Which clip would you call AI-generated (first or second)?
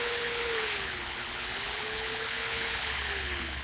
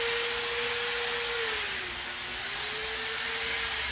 first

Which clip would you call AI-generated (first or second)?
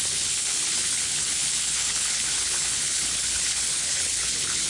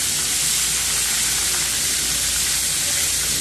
first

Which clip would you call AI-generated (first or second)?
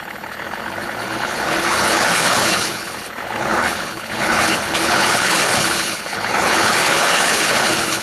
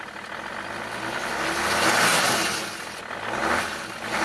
first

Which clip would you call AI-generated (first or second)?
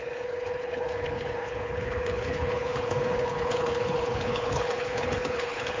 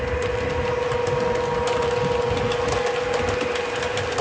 first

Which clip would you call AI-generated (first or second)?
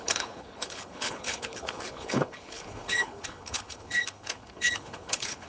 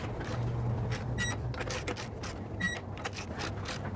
first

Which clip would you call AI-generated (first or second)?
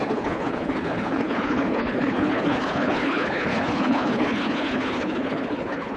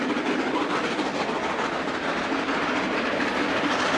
first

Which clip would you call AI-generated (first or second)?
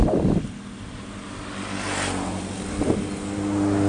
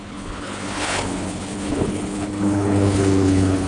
second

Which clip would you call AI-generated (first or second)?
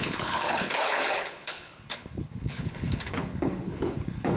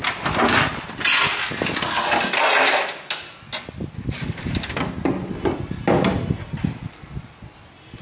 first